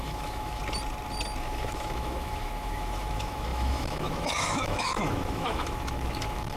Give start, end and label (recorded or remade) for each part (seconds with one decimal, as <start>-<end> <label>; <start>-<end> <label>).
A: 0.0-0.6 remade; 0.6-1.4 recorded; 1.4-6.6 remade